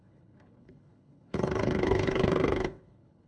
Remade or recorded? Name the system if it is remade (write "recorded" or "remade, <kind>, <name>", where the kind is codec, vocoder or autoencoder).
remade, codec, HILCodec